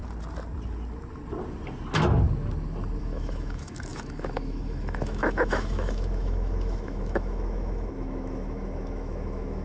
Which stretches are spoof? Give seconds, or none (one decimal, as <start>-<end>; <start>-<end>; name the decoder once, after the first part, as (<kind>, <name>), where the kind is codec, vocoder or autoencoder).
3.0-9.6 (autoencoder, DAC-VAE)

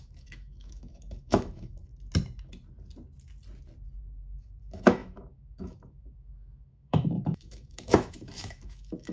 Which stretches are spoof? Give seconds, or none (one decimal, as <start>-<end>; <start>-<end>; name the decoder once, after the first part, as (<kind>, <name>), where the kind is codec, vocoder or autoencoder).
0.0-1.9 (autoencoder, DAC-VAE); 4.4-9.1

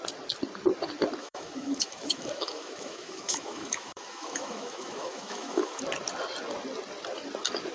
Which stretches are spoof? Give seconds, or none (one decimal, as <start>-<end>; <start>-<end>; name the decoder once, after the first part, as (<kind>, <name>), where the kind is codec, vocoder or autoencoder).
1.2-5.8 (autoencoder, DAC-VAE)

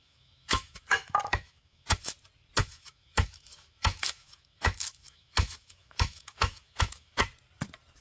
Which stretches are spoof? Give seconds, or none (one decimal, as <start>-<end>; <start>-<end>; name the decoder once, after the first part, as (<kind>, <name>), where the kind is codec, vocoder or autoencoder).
0.0-2.1 (autoencoder, DAC-VAE); 2.6-7.2

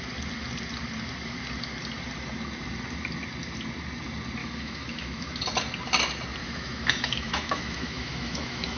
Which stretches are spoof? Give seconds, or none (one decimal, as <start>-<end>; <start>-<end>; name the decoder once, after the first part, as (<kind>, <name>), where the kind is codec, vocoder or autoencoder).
4.4-5.4 (autoencoder, DAC-VAE); 6.4-8.8

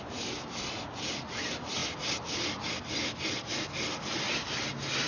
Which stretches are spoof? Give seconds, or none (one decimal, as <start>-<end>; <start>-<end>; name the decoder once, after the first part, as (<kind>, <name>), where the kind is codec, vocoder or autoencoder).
none